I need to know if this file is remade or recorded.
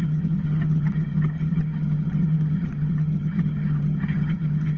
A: remade